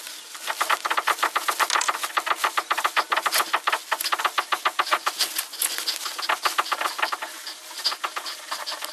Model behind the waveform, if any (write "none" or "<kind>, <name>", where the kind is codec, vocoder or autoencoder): none